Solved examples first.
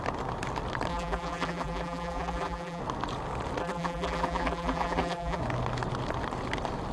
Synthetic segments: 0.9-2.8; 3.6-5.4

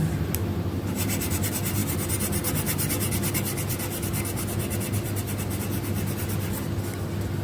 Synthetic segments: none

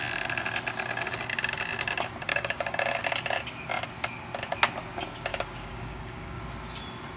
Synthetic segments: 2.3-3.0; 5.3-6.4

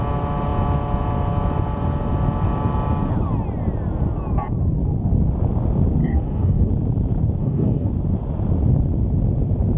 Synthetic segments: 6.0-6.7; 7.4-7.9

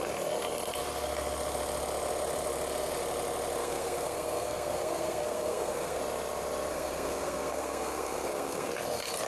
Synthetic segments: 3.6-6.0; 6.7-8.7

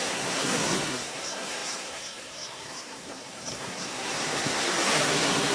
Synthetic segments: 0.0-5.5